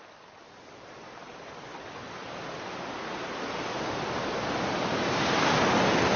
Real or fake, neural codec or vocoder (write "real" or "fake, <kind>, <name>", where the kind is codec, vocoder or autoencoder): real